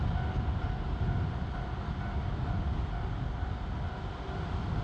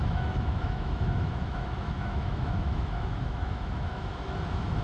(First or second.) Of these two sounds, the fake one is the second